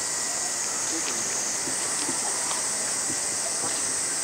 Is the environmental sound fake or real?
real